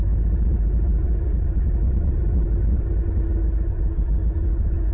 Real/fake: real